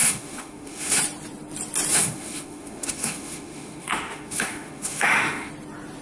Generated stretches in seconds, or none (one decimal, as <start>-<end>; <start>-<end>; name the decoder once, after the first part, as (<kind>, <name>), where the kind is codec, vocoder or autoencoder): 0.0-1.0 (autoencoder, DAC-VAE); 1.9-5.5